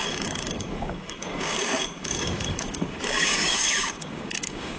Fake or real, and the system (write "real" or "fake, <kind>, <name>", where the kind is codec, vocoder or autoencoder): fake, codec, DAC